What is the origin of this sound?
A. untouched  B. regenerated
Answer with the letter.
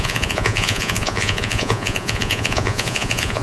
B